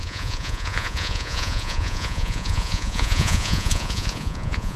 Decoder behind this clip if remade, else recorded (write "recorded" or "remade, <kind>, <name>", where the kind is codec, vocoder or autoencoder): remade, vocoder, Vocos